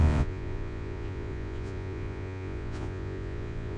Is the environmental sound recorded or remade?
remade